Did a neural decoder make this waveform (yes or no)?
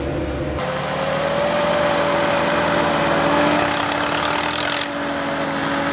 no